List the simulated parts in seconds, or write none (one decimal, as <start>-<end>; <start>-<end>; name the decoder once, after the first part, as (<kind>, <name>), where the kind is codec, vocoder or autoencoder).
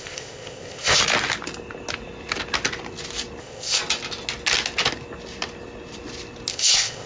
0.0-1.0 (codec, ZipCodec); 3.4-3.8; 6.5-7.1